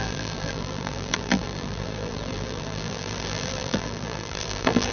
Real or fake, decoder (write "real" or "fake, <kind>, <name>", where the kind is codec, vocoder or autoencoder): fake, vocoder, BigVGAN v2